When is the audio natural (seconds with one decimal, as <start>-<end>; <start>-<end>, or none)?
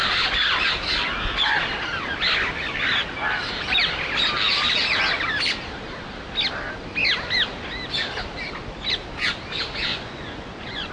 0.0-9.9